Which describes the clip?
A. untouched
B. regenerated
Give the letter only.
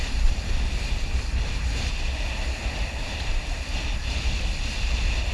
A